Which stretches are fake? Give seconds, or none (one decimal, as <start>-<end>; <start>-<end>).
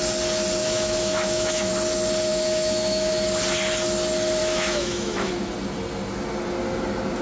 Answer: 0.6-1.7; 2.3-3.1; 4.4-5.3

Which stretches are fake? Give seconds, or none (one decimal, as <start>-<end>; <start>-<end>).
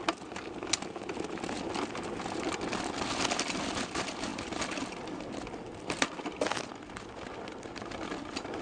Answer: none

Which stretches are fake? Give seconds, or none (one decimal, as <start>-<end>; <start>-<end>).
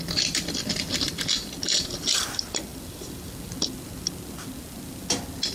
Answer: none